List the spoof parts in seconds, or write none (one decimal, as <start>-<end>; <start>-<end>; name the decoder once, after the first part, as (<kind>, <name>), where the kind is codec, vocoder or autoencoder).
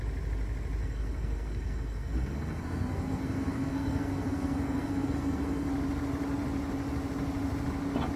0.8-5.7 (codec, SNAC)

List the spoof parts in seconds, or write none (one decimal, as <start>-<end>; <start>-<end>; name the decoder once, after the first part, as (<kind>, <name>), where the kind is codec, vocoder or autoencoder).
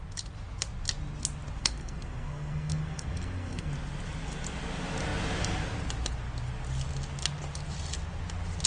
1.6-3.7 (codec, SNAC)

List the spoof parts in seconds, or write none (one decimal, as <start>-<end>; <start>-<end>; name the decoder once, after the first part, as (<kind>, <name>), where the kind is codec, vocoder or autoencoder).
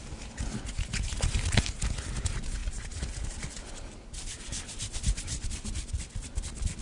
none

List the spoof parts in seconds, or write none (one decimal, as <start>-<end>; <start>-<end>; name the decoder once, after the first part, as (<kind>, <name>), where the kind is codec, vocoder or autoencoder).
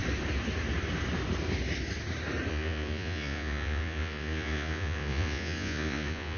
2.5-6.4 (vocoder, Vocos)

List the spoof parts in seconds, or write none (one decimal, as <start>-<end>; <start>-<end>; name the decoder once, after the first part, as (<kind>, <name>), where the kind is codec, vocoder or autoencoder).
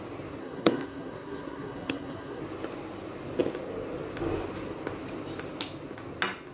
0.4-2.4 (codec, SNAC)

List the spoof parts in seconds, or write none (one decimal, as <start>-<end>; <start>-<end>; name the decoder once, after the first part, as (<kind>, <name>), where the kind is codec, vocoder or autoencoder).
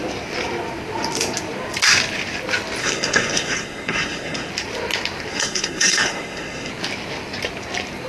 2.8-4.5 (codec, SNAC); 5.3-6.7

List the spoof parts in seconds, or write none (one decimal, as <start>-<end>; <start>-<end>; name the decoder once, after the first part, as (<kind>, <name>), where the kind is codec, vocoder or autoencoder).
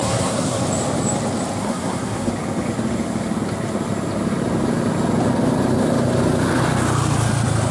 0.0-0.6 (codec, SNAC); 1.6-2.3